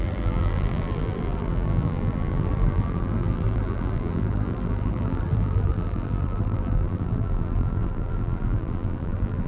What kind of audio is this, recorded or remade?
remade